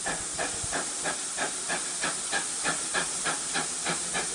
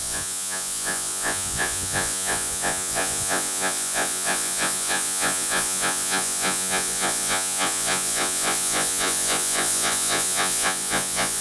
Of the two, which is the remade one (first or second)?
second